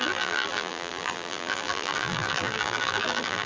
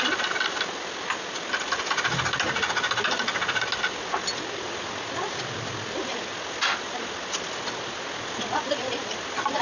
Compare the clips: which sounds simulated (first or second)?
first